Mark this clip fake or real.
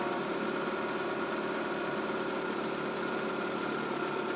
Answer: real